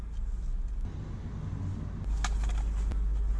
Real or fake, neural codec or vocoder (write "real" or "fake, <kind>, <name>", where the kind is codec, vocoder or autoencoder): real